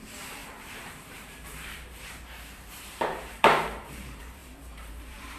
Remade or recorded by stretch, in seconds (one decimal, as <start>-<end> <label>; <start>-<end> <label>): 0.0-4.4 remade; 4.4-4.9 recorded; 4.9-5.4 remade